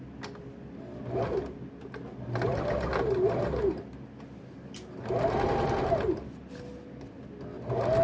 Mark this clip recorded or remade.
recorded